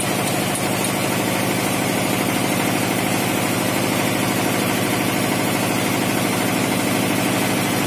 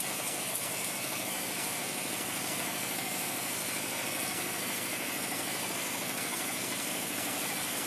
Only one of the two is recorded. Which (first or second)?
first